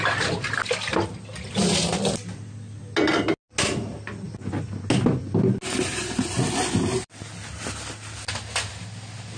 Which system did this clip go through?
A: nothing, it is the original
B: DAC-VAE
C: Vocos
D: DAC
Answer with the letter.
A